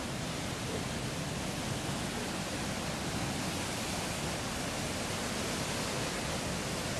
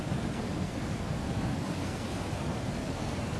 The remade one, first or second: second